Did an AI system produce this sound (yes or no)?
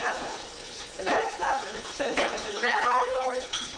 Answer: yes